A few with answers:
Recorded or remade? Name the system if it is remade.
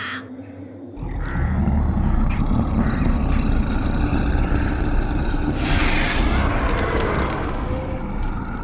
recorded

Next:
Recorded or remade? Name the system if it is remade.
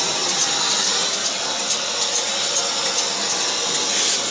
recorded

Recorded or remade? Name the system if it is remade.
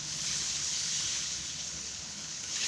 remade, codec, HILCodec